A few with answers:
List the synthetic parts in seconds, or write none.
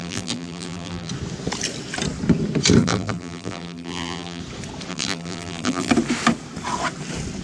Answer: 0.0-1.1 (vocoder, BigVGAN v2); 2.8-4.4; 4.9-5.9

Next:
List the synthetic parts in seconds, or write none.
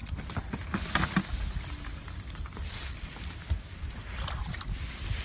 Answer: 0.0-3.4 (vocoder, BigVGAN v2); 4.4-5.2